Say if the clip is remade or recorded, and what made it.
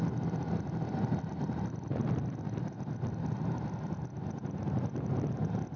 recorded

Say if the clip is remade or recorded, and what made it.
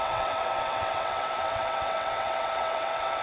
remade, vocoder, WaveNeXt